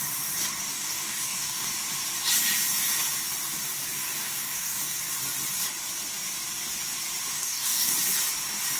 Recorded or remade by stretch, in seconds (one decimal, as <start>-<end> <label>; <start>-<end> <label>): 0.0-0.7 recorded; 0.7-1.7 remade; 1.7-4.2 recorded; 4.2-5.0 remade; 5.0-7.3 recorded; 7.3-7.9 remade; 7.9-8.8 recorded